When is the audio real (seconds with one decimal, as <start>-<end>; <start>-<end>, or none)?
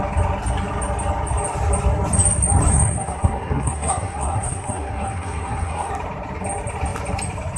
0.0-2.7; 5.9-7.6